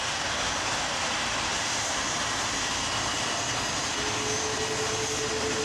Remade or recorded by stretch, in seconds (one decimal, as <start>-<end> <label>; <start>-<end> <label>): 0.0-5.6 recorded